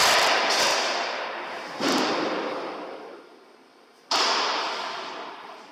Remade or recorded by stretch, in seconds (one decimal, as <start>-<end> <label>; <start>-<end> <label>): 0.0-0.7 recorded; 0.7-2.1 remade; 2.1-3.7 recorded; 3.7-4.7 remade; 4.7-5.7 recorded